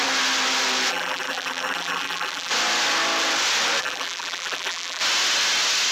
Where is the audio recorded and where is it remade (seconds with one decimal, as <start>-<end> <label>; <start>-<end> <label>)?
0.0-0.9 recorded; 0.9-2.5 remade; 2.5-3.8 recorded; 3.8-5.0 remade; 5.0-5.9 recorded